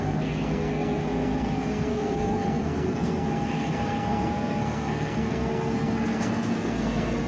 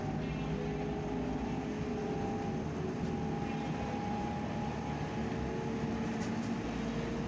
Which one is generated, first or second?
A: first